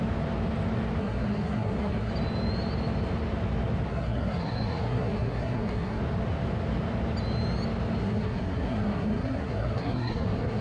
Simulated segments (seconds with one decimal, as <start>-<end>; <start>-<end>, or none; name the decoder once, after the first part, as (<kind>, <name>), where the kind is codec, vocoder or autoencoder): 1.0-2.1 (codec, SNAC); 3.9-6.0; 8.0-10.6